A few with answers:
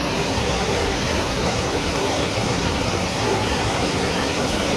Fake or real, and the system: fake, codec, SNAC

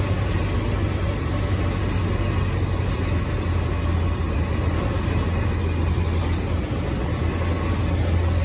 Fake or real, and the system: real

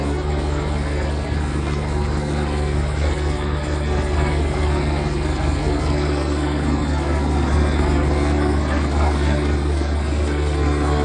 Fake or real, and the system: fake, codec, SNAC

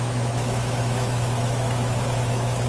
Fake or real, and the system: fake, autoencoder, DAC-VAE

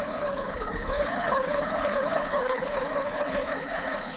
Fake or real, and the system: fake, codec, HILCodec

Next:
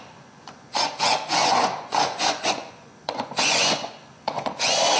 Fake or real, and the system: fake, vocoder, Vocos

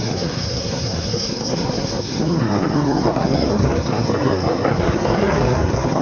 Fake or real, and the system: fake, codec, SNAC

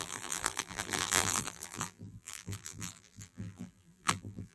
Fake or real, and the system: fake, vocoder, BigVGAN v2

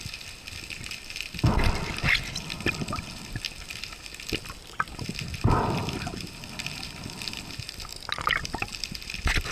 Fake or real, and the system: real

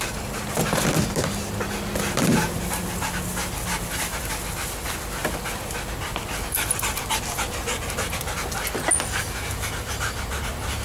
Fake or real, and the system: real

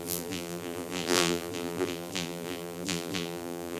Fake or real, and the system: fake, vocoder, BigVGAN v2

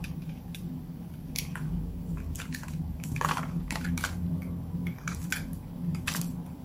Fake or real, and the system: fake, codec, DAC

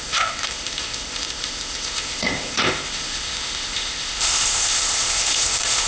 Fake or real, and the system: fake, codec, ZipCodec